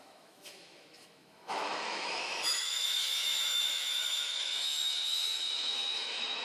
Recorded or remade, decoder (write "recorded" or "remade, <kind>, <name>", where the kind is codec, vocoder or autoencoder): remade, autoencoder, DAC-VAE